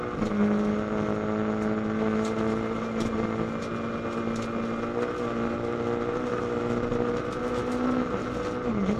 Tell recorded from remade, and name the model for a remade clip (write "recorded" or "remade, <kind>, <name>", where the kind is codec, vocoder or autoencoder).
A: recorded